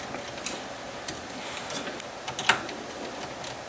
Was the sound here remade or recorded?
recorded